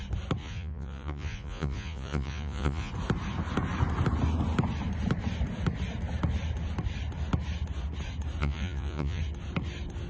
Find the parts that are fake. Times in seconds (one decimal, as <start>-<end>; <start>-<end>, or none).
0.4-2.9; 8.4-9.2